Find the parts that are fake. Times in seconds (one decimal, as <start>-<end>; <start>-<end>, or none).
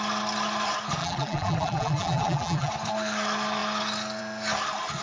1.0-2.7